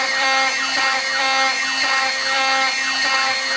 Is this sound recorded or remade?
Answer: recorded